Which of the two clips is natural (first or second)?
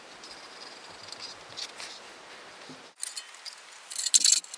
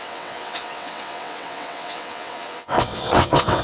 first